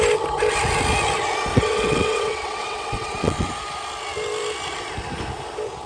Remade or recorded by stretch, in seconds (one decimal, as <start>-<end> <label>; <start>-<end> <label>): 0.0-1.5 recorded; 1.5-3.5 remade; 3.5-5.9 recorded